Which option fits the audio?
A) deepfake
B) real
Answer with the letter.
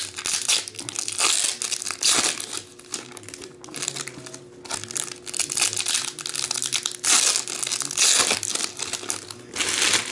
B